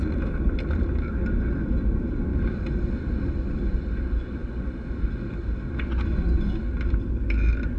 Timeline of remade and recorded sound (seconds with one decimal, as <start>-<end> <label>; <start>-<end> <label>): 0.0-2.3 recorded; 2.3-4.0 remade; 4.0-7.8 recorded